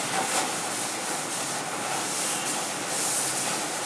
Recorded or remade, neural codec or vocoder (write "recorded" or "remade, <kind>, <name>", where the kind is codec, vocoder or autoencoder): recorded